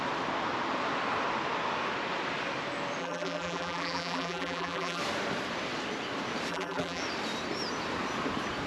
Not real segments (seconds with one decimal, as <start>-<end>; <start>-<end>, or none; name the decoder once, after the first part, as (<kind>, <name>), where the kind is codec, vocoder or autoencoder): 3.0-5.0 (vocoder, BigVGAN v2); 6.5-7.0